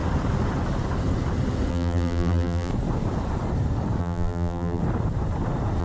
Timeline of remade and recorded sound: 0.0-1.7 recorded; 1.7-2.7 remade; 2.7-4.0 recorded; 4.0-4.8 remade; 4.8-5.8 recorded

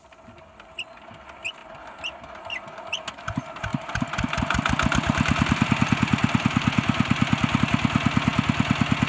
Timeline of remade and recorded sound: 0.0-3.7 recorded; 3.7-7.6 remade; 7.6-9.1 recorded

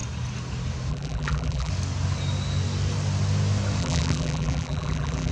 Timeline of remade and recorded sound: 0.0-0.9 recorded; 0.9-1.7 remade; 1.7-3.8 recorded; 3.8-5.3 remade

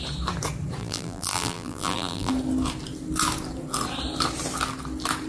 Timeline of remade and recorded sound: 0.0-0.8 recorded; 0.8-2.3 remade; 2.3-5.3 recorded

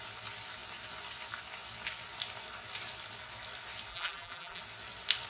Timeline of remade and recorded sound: 0.0-3.9 recorded; 3.9-4.6 remade; 4.6-5.3 recorded